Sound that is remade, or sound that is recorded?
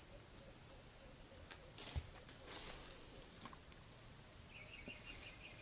recorded